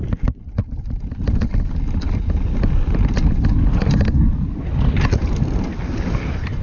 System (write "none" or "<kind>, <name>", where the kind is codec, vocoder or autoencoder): none